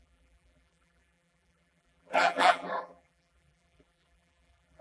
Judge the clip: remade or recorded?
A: remade